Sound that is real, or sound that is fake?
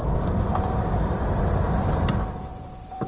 fake